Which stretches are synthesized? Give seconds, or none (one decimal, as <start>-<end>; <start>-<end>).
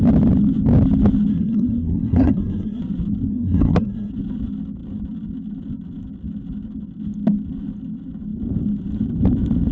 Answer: 1.3-2.8; 3.3-4.1